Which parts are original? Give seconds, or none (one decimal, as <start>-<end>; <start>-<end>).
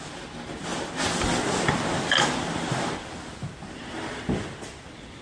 0.0-5.2